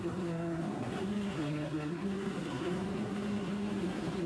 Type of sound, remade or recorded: remade